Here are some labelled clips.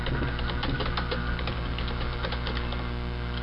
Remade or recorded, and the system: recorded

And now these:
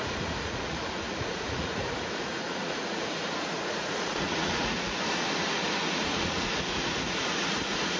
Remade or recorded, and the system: remade, vocoder, Vocos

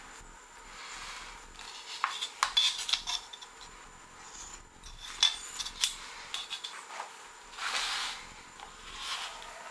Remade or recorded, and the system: recorded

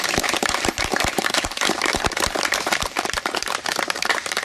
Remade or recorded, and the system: remade, vocoder, BigVGAN v2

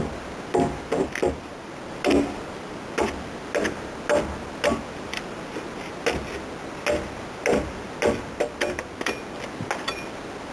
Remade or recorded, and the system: recorded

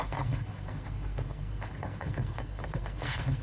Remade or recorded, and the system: remade, codec, SNAC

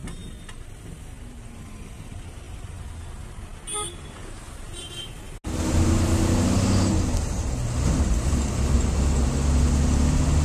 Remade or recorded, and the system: recorded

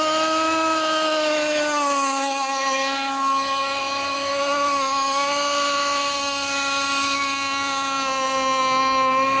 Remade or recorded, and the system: remade, autoencoder, DAC-VAE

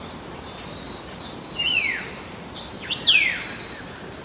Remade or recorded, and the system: recorded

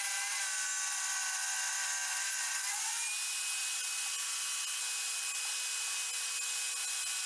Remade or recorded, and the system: recorded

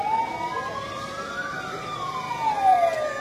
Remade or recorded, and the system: remade, vocoder, BigVGAN v2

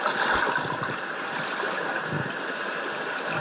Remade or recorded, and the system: recorded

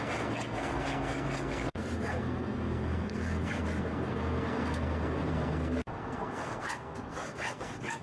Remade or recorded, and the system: remade, codec, SNAC